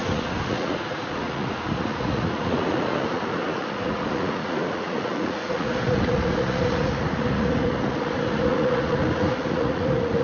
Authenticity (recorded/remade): remade